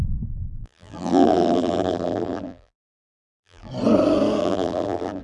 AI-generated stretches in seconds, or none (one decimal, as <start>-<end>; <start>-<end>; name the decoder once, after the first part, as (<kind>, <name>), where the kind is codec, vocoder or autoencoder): 0.6-3.7 (vocoder, BigVGAN v2); 4.4-5.2